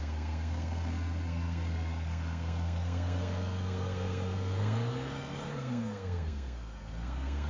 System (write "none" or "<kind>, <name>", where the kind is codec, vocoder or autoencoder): codec, SNAC